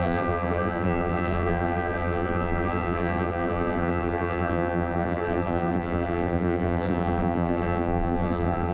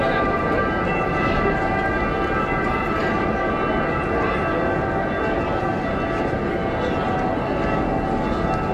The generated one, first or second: first